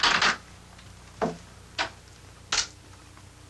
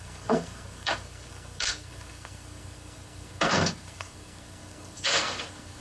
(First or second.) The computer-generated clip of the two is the second